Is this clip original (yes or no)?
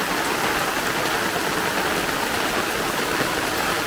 yes